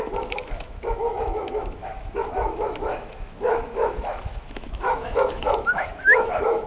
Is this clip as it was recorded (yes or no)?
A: no